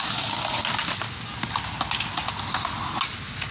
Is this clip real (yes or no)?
yes